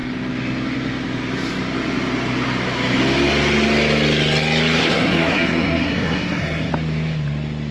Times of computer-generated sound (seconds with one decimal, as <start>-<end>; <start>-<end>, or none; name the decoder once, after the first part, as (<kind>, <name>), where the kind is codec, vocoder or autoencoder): 4.8-6.7 (codec, SNAC)